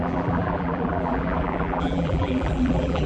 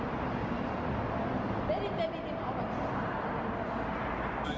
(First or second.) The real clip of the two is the second